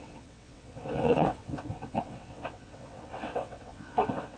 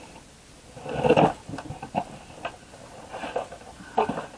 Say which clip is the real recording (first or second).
second